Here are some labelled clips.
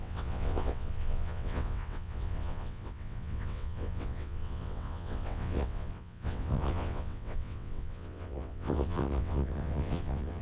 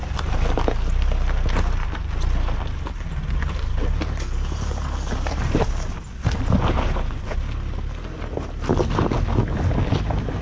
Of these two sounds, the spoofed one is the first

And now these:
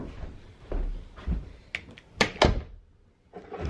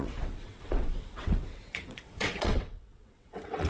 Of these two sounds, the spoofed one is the second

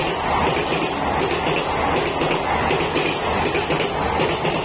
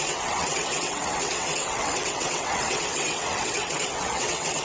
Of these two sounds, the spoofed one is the second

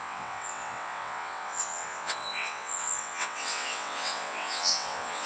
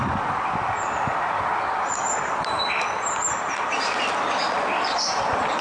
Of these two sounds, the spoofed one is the first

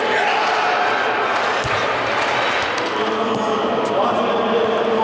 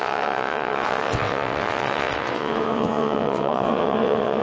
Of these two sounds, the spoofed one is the second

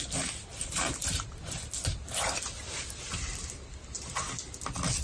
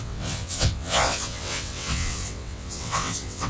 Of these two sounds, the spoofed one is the second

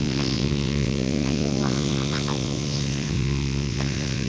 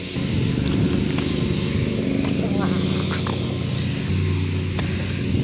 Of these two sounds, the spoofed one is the first